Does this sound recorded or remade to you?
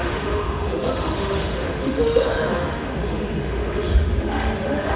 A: remade